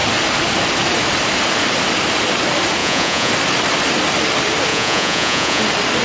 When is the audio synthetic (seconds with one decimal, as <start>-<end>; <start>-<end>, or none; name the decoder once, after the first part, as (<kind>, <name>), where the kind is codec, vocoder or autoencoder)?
2.8-3.3 (vocoder, Vocos); 4.7-5.6